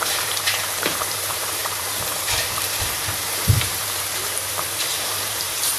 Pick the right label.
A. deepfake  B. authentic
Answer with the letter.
A